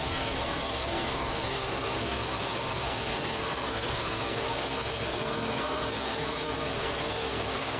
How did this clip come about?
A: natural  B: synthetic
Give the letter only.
B